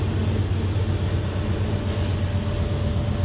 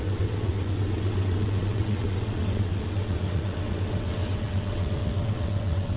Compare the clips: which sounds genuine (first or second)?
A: first